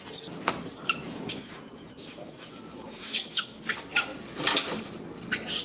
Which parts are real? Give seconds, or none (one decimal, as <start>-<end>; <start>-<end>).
0.0-1.0; 3.6-5.6